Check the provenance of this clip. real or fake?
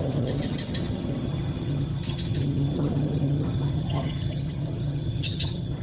fake